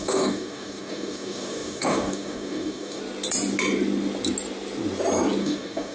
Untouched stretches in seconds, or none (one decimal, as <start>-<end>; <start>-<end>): 3.0-5.4